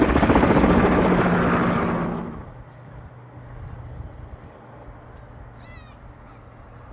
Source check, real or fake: real